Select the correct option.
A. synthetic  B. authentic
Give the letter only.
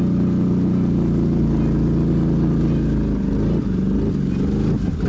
B